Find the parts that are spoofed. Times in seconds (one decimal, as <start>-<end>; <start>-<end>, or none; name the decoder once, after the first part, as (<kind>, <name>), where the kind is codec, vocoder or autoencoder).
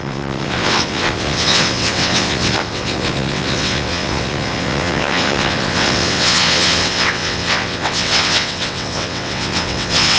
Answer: 0.0-10.2 (vocoder, WaveNeXt)